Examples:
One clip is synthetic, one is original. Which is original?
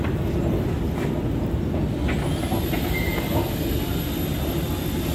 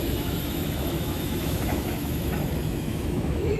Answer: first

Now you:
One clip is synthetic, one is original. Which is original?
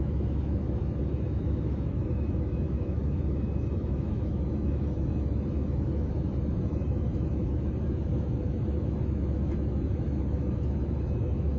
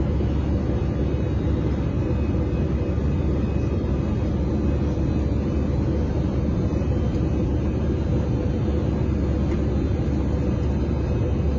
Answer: second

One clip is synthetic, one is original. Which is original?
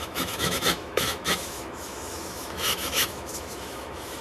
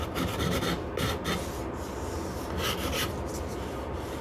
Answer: second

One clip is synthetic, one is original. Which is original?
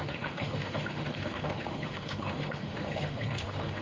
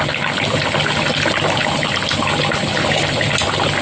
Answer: second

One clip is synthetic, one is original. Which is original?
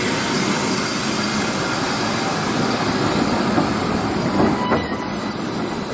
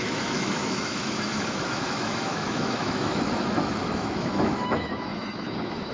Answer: first